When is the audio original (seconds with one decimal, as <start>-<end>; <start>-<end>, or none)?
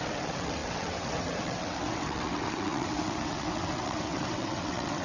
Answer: none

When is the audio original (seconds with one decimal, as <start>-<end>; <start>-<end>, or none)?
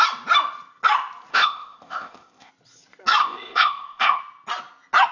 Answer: 0.0-1.3; 2.5-3.2; 4.2-5.1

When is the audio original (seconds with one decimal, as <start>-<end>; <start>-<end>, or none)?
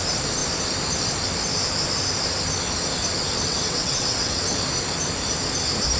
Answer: 0.0-3.4; 4.4-6.0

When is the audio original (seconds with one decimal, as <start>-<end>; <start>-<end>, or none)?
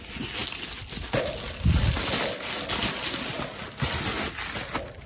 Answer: 0.0-5.1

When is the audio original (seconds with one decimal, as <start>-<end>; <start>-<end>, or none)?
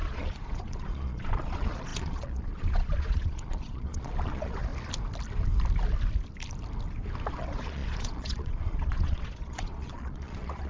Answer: 4.7-7.3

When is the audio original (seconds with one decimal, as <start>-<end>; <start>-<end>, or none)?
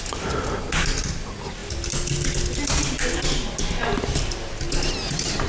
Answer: 0.0-5.5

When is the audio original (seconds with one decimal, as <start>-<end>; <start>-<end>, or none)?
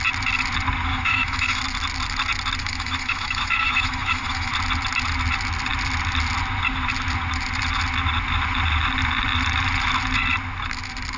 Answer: 0.0-0.9; 1.6-2.6; 4.5-11.2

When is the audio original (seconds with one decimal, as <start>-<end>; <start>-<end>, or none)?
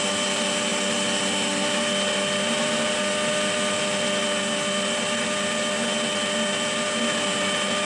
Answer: 0.0-7.8